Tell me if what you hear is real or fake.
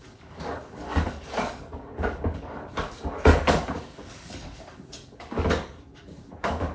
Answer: fake